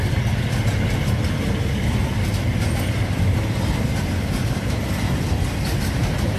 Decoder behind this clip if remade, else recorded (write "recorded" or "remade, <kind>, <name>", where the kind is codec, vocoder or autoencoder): recorded